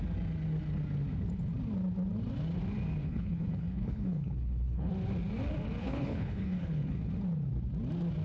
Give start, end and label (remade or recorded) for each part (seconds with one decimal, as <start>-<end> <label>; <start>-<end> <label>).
0.0-3.0 recorded; 3.0-4.9 remade; 4.9-5.8 recorded; 5.8-7.1 remade; 7.1-8.2 recorded

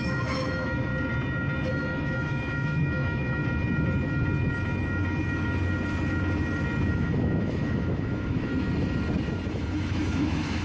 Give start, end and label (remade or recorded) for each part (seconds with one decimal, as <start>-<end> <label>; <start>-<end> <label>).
0.0-0.9 remade; 0.9-1.7 recorded; 1.7-3.4 remade; 3.4-6.9 recorded; 6.9-8.5 remade; 8.5-9.5 recorded; 9.5-10.6 remade

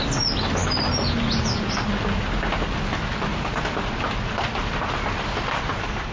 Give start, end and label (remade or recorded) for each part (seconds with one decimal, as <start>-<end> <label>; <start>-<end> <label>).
0.0-6.1 recorded

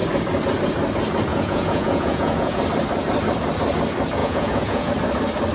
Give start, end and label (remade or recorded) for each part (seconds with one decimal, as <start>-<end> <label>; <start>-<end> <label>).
0.0-1.3 recorded; 1.3-2.6 remade; 2.6-4.2 recorded; 4.2-4.9 remade; 4.9-5.5 recorded

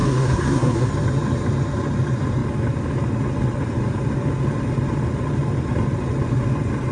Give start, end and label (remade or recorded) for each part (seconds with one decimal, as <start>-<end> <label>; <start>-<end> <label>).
0.0-0.9 remade; 0.9-6.9 recorded

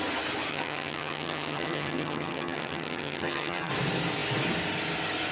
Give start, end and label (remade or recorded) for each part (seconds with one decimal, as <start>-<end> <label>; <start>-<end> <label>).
0.0-0.5 recorded; 0.5-3.7 remade; 3.7-5.3 recorded

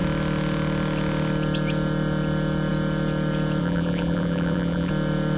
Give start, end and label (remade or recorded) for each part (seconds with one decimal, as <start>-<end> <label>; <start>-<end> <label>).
0.0-3.6 recorded; 3.6-4.9 remade; 4.9-5.4 recorded